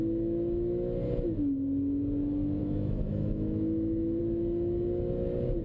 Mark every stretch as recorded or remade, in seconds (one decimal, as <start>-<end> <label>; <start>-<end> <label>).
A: 0.0-2.6 recorded; 2.6-4.2 remade; 4.2-5.6 recorded

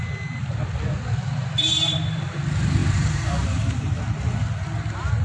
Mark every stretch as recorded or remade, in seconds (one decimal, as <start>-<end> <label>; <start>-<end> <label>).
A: 0.0-2.8 recorded; 2.8-3.8 remade; 3.8-5.2 recorded

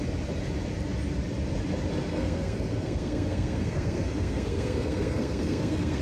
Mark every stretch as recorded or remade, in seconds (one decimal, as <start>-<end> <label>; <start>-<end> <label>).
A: 0.0-2.1 recorded; 2.1-6.0 remade

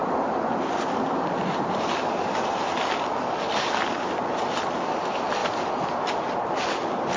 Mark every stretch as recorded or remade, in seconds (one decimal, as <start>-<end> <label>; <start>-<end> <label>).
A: 0.0-7.2 recorded

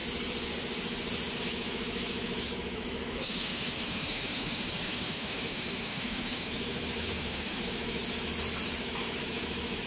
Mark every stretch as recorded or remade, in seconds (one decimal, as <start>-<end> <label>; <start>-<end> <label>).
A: 0.0-1.4 recorded; 1.4-8.0 remade; 8.0-8.8 recorded; 8.8-9.9 remade